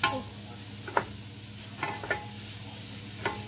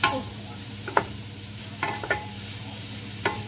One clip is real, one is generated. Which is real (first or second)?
first